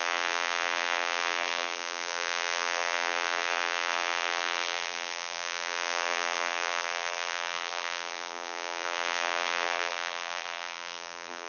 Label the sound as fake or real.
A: fake